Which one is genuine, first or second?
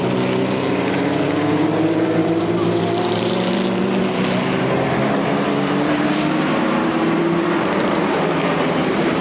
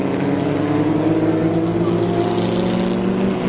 second